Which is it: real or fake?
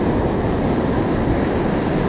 real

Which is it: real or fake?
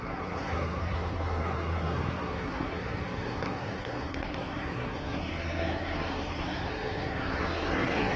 fake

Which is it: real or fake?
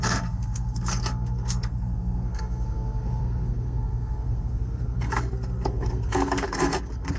fake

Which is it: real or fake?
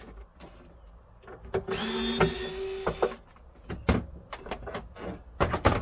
real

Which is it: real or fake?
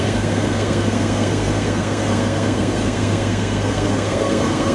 fake